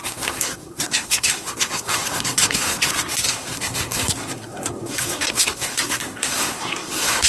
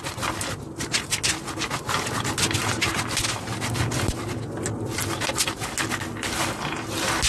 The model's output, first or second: first